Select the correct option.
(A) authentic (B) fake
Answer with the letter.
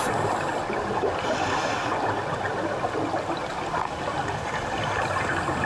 A